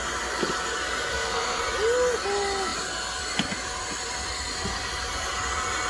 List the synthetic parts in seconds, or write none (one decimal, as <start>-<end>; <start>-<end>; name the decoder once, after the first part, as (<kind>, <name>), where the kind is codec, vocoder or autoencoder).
1.1-1.6 (codec, SNAC)